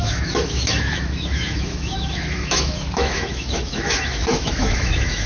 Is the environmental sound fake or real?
fake